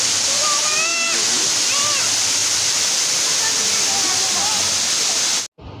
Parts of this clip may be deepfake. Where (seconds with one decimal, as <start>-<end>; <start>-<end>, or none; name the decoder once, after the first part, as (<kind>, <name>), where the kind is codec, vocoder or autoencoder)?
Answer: 2.4-4.5 (vocoder, BigVGAN v2)